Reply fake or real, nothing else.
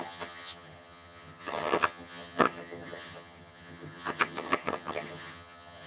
fake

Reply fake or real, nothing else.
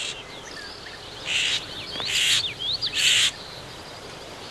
fake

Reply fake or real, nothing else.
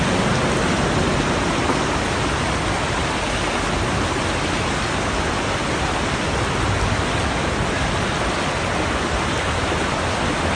real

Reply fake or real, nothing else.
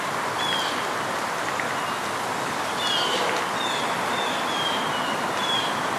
real